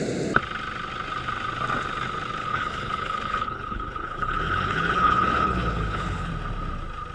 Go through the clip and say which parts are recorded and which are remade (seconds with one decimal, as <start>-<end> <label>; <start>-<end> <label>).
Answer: 0.0-2.4 recorded; 2.4-6.3 remade; 6.3-7.1 recorded

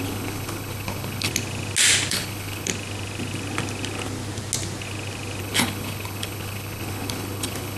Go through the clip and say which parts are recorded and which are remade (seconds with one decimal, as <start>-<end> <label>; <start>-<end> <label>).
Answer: 0.0-1.3 remade; 1.3-2.1 recorded; 2.1-2.7 remade; 2.7-5.4 recorded; 5.4-7.8 remade

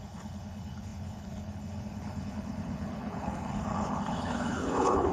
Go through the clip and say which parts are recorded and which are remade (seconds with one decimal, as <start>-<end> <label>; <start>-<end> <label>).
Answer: 0.0-5.1 remade

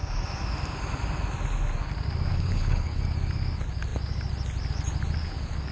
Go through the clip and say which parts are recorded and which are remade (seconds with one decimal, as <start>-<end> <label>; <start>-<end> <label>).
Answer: 0.0-2.3 recorded; 2.3-3.0 remade; 3.0-5.7 recorded

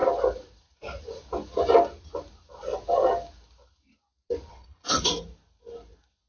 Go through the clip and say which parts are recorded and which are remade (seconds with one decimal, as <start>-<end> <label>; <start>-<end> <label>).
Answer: 0.0-4.5 recorded; 4.5-5.1 remade; 5.1-6.3 recorded

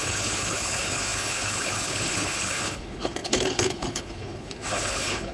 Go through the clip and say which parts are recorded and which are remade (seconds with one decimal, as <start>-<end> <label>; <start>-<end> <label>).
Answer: 0.0-5.3 remade

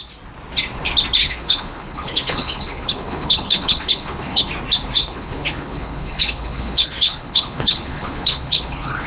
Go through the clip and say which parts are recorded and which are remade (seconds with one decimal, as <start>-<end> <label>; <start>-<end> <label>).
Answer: 0.0-1.2 recorded; 1.2-4.5 remade; 4.5-5.0 recorded; 5.0-9.1 remade